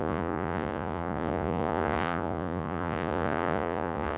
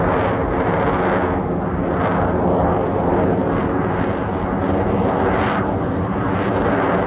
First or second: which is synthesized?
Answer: first